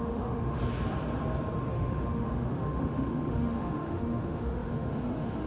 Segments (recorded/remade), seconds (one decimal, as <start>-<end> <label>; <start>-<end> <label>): 0.0-0.6 remade; 0.6-1.7 recorded; 1.7-5.5 remade